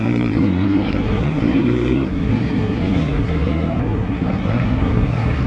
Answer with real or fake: fake